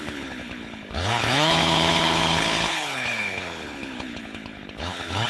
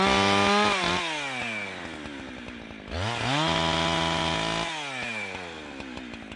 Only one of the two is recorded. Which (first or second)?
second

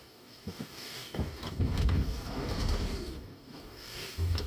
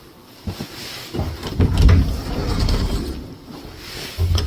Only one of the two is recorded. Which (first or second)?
second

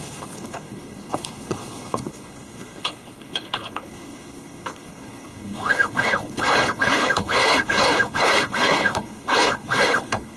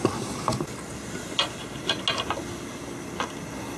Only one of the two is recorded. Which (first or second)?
second